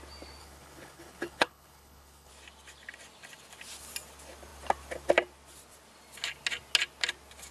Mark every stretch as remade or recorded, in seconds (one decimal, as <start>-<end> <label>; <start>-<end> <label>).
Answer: 0.0-0.4 recorded; 0.4-2.3 remade; 2.3-7.5 recorded

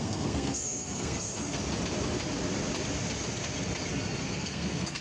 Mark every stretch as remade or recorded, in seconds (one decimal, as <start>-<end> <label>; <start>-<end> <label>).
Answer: 0.0-1.6 remade; 1.6-4.2 recorded; 4.2-5.0 remade